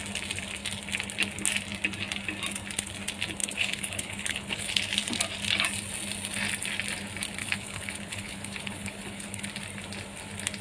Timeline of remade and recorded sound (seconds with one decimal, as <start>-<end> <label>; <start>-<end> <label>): 0.0-3.4 recorded; 3.4-4.8 remade; 4.8-7.4 recorded; 7.4-9.4 remade; 9.4-10.6 recorded